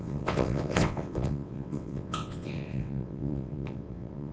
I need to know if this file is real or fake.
fake